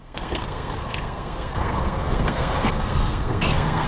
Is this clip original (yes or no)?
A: no